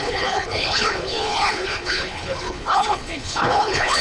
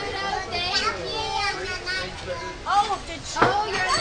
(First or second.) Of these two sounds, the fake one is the first